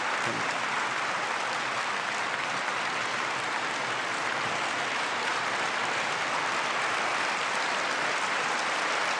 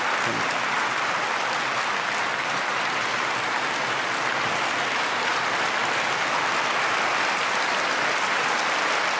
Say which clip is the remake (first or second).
first